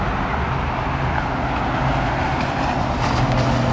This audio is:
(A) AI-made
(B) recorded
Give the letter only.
B